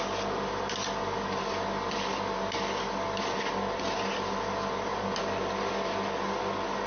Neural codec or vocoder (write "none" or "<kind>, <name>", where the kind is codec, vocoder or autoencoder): none